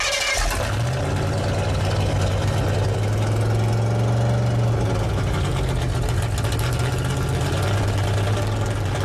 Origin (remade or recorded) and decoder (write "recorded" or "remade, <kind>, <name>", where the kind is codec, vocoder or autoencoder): recorded